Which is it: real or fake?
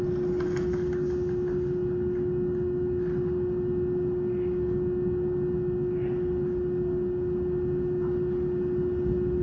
real